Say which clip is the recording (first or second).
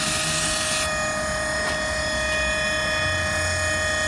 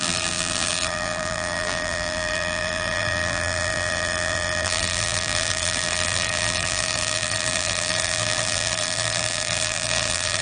first